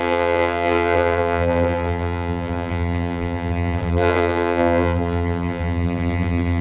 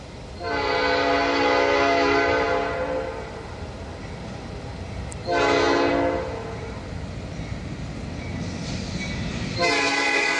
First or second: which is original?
second